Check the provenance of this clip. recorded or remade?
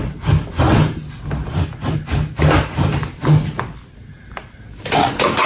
recorded